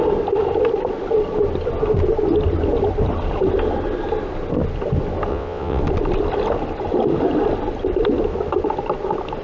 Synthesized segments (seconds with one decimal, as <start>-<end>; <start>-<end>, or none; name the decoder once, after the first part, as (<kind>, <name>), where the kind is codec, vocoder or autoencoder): 5.3-5.8 (vocoder, WaveNeXt)